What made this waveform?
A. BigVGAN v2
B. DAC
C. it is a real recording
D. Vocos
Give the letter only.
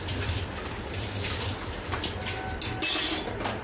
C